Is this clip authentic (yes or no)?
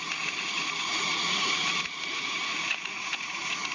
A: no